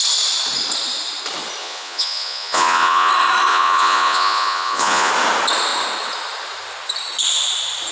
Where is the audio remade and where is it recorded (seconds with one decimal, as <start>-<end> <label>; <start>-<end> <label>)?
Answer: 0.0-1.6 recorded; 1.6-3.1 remade; 3.1-3.5 recorded; 3.5-5.1 remade; 5.1-7.9 recorded